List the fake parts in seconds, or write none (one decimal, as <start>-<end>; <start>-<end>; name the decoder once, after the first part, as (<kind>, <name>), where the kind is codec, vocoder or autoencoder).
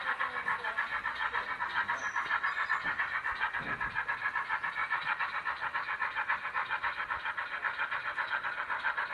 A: none